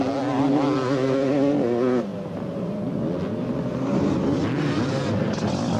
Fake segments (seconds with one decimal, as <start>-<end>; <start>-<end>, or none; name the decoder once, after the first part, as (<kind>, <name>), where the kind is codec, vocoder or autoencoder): none